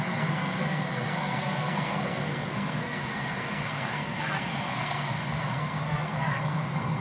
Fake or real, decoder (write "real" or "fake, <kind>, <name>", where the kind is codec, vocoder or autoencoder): fake, codec, SNAC